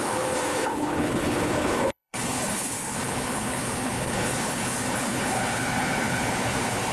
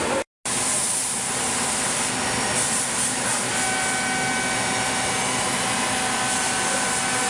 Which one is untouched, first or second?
second